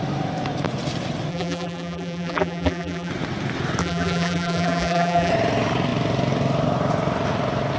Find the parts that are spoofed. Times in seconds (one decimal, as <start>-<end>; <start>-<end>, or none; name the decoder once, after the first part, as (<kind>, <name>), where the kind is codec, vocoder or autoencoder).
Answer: 1.3-3.1 (vocoder, BigVGAN v2); 3.8-5.3